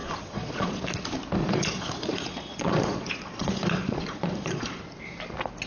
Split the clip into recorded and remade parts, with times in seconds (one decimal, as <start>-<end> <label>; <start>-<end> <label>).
0.0-0.8 remade; 0.8-1.4 recorded; 1.4-4.8 remade; 4.8-5.7 recorded